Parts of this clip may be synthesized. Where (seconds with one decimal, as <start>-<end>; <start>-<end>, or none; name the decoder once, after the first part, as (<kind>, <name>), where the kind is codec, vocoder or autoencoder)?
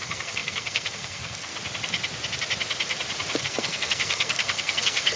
0.0-1.5 (codec, SNAC); 3.4-5.2